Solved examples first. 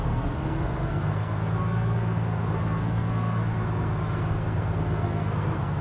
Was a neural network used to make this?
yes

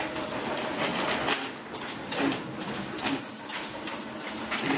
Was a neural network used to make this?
no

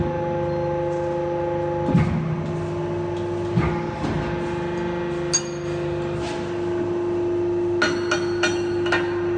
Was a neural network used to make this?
no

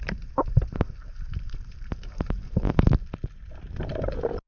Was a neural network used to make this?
yes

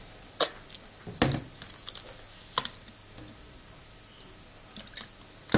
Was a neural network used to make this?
no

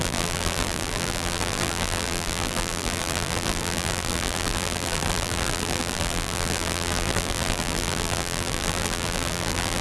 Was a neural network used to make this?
yes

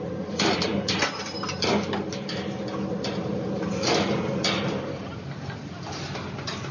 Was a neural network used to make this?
no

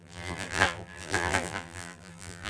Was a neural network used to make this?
yes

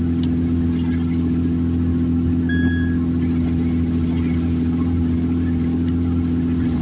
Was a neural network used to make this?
no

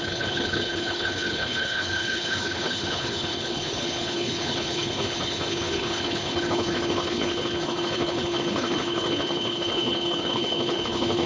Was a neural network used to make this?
yes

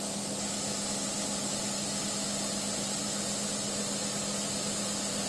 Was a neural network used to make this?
no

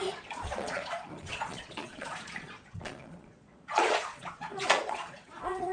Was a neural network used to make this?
yes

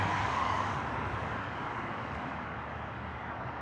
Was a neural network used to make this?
yes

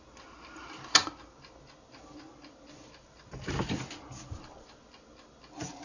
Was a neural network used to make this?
no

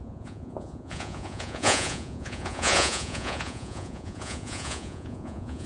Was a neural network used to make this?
yes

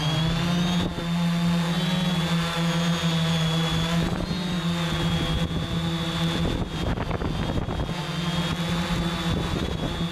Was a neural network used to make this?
no